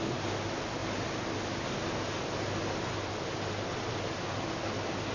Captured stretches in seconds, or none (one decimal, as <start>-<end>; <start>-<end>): 0.0-5.1